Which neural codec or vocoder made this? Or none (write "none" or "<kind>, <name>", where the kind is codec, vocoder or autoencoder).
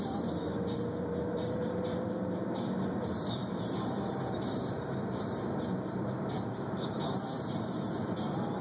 vocoder, BigVGAN v2